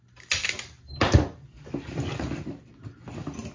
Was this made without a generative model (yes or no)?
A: yes